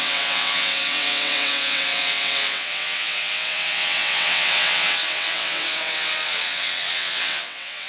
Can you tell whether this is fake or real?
fake